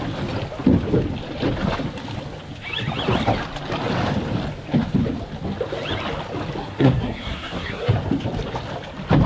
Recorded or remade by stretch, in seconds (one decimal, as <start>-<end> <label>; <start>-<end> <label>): 0.0-6.6 recorded; 6.6-7.9 remade; 7.9-9.3 recorded